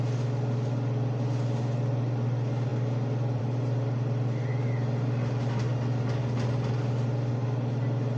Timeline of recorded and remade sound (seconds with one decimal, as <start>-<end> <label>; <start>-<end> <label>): 0.0-8.2 recorded